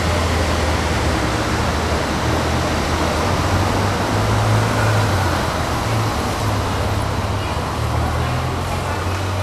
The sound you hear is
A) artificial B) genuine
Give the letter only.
B